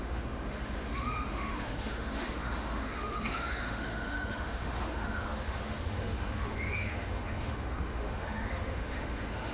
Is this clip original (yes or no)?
no